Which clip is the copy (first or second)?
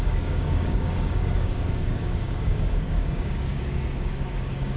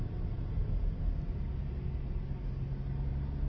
first